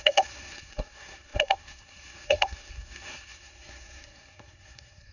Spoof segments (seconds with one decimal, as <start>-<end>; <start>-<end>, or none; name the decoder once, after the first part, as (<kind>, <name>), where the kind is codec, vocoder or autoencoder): 0.0-5.1 (codec, SNAC)